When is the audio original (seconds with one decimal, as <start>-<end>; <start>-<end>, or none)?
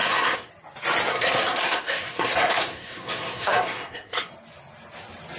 0.5-1.1; 4.3-5.4